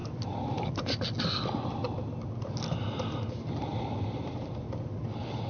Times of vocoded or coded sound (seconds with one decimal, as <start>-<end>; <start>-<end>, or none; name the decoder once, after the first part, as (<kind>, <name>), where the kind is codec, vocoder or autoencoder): none